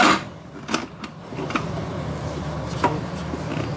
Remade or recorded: recorded